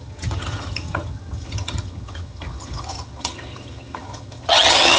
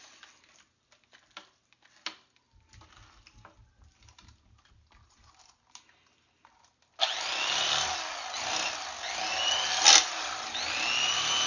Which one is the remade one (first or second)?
first